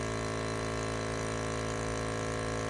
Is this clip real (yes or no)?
yes